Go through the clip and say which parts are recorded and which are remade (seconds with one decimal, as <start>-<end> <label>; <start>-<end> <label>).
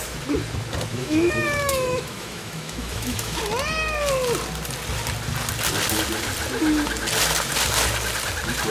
0.0-0.9 recorded; 0.9-3.4 remade; 3.4-8.7 recorded